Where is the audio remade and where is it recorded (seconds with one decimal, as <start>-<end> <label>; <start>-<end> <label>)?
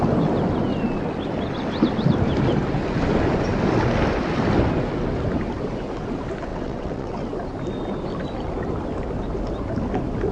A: 0.0-6.5 recorded; 6.5-7.2 remade; 7.2-10.3 recorded